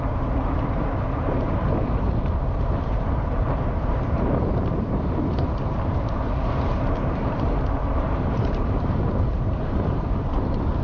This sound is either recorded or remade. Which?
remade